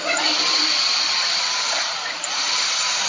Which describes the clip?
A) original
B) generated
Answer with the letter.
A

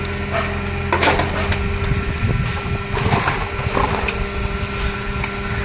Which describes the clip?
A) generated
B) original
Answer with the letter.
B